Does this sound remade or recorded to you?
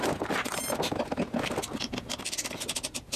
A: recorded